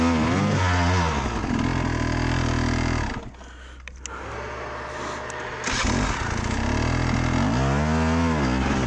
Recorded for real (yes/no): yes